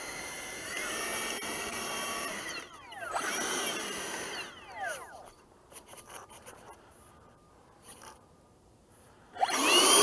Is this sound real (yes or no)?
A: no